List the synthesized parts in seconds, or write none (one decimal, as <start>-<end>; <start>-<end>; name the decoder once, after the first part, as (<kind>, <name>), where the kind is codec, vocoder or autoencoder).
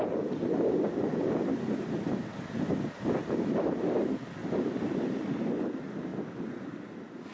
4.4-5.2 (vocoder, BigVGAN v2)